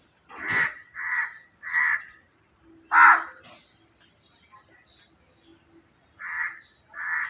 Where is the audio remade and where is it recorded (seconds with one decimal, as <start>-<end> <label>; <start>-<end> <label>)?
0.0-7.3 remade